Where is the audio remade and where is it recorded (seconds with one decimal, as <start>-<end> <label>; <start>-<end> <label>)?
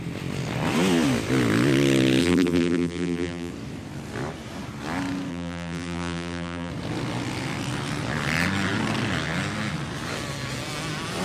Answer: 0.0-2.2 recorded; 2.2-3.5 remade; 3.5-5.3 recorded; 5.3-6.7 remade; 6.7-11.2 recorded